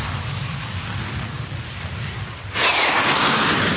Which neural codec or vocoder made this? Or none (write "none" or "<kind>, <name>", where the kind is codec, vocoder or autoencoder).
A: none